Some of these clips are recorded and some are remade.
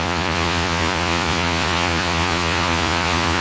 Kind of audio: remade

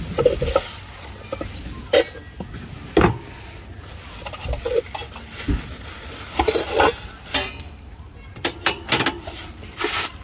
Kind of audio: recorded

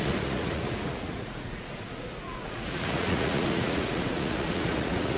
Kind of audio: remade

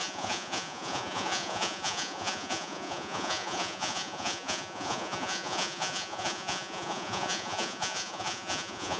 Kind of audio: remade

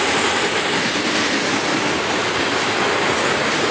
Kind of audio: recorded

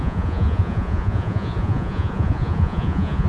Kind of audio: remade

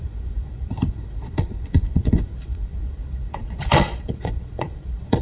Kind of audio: remade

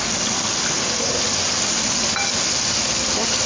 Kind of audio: recorded